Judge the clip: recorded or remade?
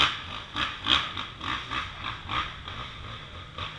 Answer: recorded